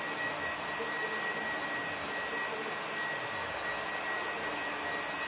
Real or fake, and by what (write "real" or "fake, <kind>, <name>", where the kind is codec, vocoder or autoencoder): real